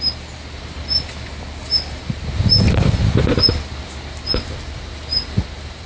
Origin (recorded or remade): recorded